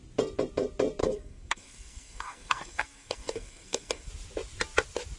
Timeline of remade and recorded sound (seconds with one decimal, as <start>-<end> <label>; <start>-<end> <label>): 0.0-1.0 recorded; 1.0-4.1 remade; 4.1-5.2 recorded